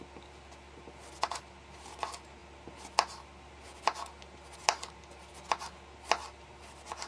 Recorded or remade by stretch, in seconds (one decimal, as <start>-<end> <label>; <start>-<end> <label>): 0.0-7.1 recorded